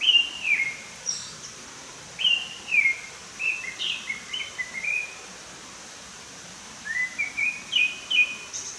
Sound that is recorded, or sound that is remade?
remade